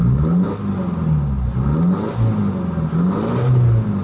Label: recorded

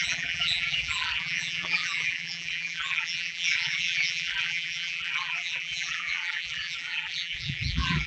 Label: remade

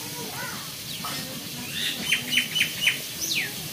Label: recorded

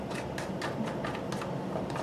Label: recorded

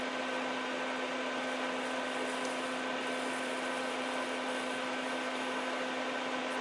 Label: recorded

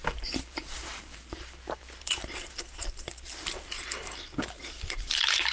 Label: remade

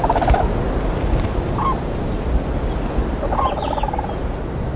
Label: recorded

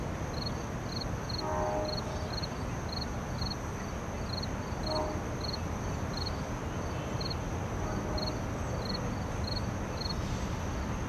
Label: recorded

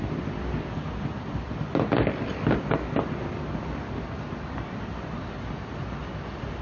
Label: recorded